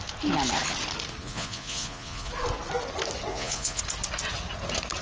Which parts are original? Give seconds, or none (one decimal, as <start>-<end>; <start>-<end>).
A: 0.0-1.2; 2.3-3.3; 3.8-5.0